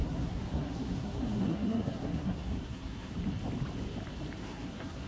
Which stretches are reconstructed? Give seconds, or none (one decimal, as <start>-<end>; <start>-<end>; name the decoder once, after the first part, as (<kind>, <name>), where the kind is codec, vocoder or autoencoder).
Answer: 0.0-3.1 (codec, SNAC); 4.4-5.1